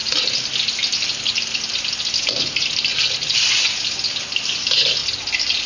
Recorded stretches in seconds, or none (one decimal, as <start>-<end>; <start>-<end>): 0.0-5.7